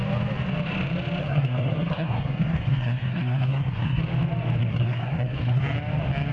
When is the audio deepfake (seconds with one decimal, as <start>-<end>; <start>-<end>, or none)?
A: 1.2-4.0; 4.6-5.6